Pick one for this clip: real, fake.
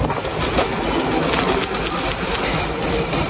real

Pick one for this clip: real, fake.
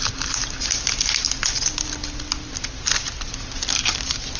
real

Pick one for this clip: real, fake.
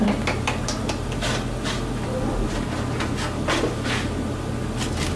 real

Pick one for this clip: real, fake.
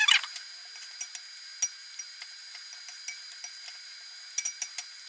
real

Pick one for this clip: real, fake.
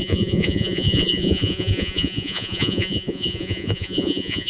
fake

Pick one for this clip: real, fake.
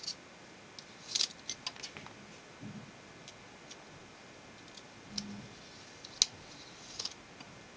real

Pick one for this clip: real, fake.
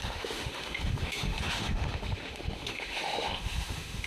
fake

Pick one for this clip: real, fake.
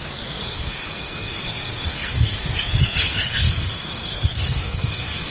fake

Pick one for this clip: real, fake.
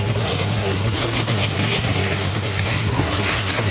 fake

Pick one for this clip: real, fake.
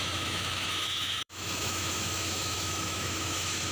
fake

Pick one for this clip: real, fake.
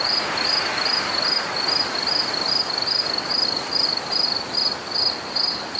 real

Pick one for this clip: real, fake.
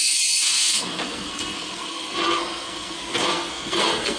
fake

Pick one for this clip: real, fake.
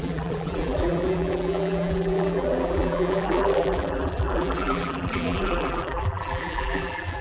fake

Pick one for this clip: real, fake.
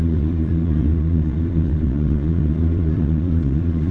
fake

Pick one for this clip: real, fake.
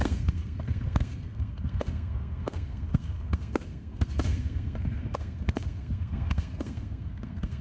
fake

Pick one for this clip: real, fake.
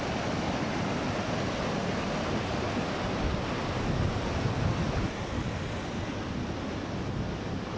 real